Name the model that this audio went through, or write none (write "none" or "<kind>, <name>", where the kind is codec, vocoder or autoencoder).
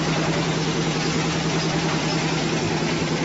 none